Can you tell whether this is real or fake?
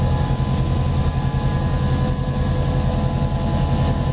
real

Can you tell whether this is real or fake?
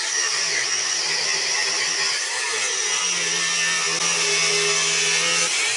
real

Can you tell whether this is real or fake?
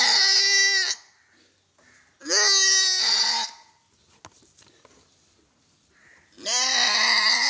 real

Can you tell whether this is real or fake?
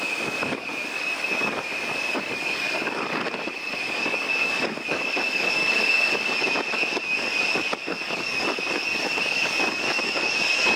fake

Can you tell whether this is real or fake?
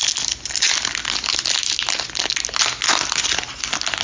real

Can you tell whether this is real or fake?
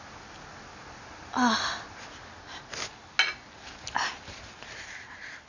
real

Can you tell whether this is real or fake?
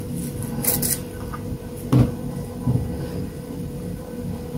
real